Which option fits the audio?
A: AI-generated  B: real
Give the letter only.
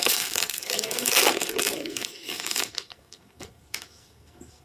A